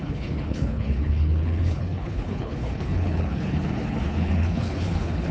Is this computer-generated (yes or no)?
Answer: yes